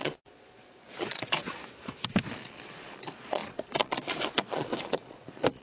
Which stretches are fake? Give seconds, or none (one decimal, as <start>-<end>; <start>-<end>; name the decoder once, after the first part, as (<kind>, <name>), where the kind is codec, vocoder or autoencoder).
0.0-1.4 (vocoder, Vocos); 2.3-5.6